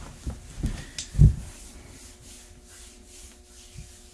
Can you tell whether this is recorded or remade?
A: recorded